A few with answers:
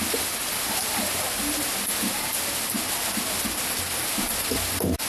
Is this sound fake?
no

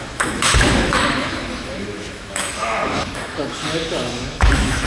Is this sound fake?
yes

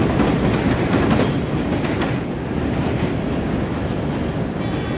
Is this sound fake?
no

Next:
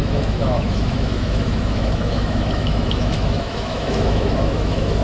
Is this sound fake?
yes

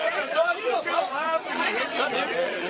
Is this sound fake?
yes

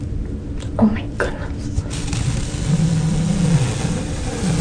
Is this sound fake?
no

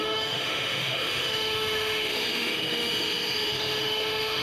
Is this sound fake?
yes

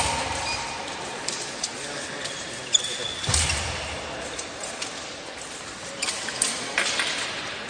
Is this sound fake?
no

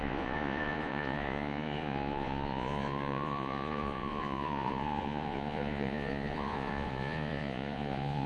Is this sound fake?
yes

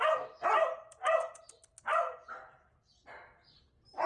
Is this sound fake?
no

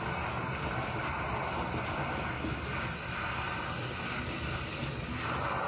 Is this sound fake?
no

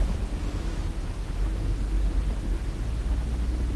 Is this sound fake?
no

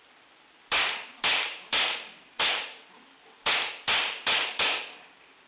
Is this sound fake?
no